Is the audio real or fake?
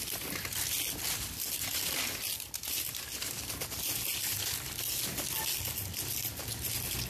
real